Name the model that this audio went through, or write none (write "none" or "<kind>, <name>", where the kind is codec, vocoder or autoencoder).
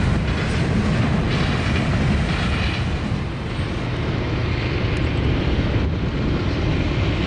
none